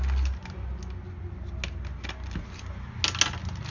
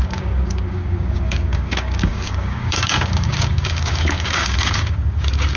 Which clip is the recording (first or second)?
first